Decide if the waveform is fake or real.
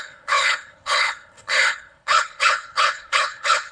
fake